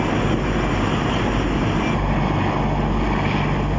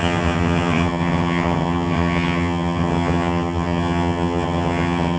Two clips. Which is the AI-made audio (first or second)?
second